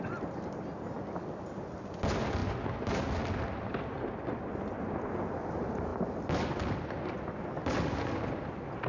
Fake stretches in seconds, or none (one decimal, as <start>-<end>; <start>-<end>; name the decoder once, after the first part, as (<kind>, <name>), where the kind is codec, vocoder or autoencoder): none